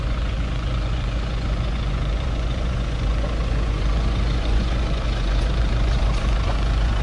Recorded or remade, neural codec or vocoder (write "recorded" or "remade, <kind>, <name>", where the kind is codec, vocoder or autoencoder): remade, vocoder, Vocos